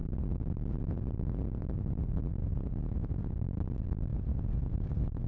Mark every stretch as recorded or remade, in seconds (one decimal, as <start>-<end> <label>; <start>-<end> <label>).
0.0-2.4 recorded; 2.4-3.3 remade; 3.3-4.1 recorded; 4.1-5.3 remade